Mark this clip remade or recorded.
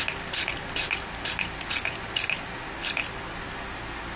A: recorded